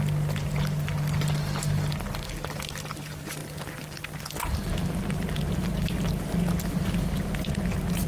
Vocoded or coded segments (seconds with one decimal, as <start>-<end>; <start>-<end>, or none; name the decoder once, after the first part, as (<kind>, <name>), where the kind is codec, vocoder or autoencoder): none